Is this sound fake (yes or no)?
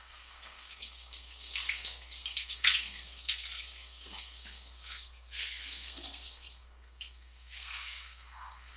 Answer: yes